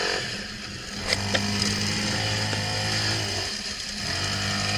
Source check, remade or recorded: recorded